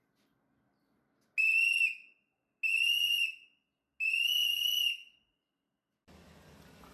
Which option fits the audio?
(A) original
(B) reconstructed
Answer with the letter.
A